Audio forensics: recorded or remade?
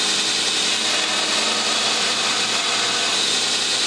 recorded